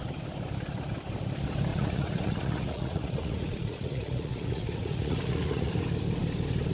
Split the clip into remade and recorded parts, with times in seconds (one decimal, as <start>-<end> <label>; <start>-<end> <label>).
0.0-1.7 recorded; 1.7-5.7 remade; 5.7-6.7 recorded